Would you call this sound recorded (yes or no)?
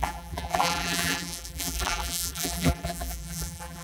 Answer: no